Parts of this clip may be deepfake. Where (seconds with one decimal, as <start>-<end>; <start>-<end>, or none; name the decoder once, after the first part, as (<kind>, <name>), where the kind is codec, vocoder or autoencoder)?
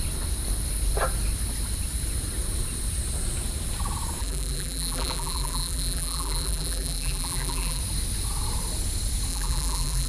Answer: 4.2-7.8 (vocoder, BigVGAN v2); 9.3-10.1